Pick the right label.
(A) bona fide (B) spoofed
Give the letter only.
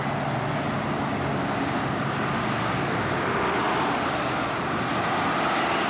A